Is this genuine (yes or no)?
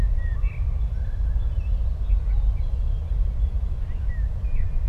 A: yes